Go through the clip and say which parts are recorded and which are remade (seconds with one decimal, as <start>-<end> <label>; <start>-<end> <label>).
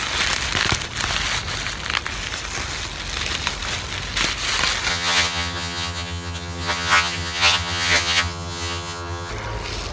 0.0-4.9 recorded; 4.9-9.3 remade; 9.3-9.9 recorded